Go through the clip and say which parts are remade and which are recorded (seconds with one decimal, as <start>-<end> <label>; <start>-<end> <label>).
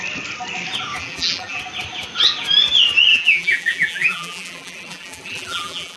0.0-1.0 recorded; 1.0-1.6 remade; 1.6-3.1 recorded; 3.1-6.0 remade